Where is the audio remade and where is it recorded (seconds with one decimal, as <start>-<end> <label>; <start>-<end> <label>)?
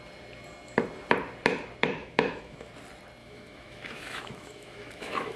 0.0-2.0 recorded; 2.0-2.7 remade; 2.7-3.2 recorded; 3.2-5.4 remade